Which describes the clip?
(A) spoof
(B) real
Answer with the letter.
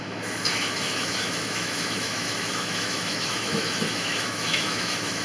A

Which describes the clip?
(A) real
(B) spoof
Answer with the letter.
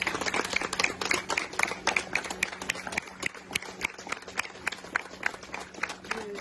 A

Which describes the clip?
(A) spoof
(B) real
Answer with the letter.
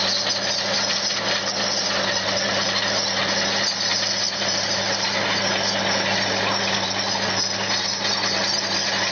B